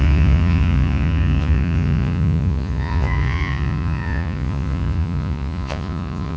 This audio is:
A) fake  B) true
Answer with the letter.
A